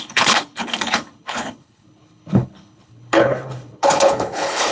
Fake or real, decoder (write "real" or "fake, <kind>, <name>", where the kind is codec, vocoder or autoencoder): fake, codec, HILCodec